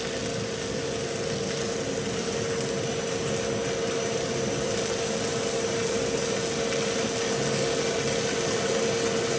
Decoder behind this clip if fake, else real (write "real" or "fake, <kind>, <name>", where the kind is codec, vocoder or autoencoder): real